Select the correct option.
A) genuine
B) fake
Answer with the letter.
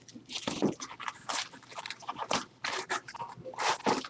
A